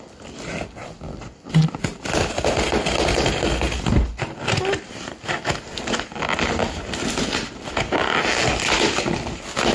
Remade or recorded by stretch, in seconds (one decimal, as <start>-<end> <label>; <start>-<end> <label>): 0.0-9.7 recorded